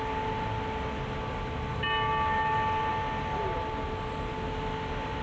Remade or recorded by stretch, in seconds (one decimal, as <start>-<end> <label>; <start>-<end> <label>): 0.0-5.2 recorded